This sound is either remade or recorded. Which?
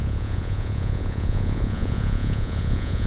remade